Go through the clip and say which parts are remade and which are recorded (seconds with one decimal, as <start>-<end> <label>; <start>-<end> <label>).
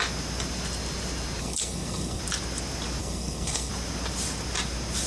0.0-1.4 recorded; 1.4-2.2 remade; 2.2-3.0 recorded; 3.0-3.7 remade; 3.7-5.1 recorded